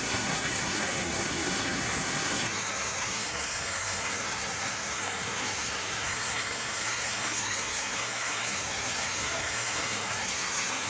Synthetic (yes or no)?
yes